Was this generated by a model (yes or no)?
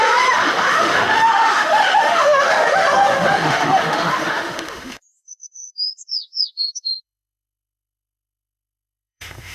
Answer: yes